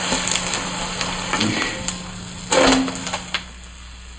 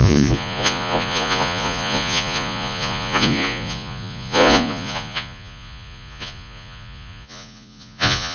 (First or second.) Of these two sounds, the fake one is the second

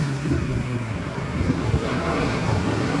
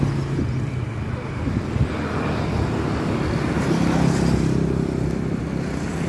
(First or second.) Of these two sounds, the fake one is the first